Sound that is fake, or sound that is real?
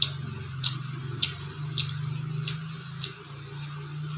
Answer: real